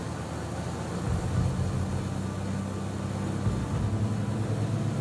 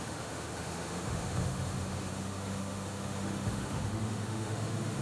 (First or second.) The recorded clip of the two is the first